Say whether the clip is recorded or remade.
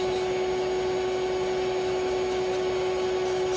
recorded